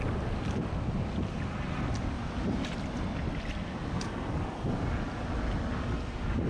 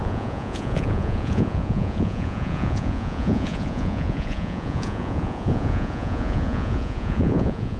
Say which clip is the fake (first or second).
second